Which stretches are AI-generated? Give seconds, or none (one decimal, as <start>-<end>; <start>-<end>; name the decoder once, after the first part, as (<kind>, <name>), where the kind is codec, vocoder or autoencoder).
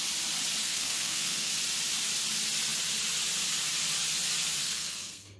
0.6-1.5 (codec, SNAC); 4.6-5.4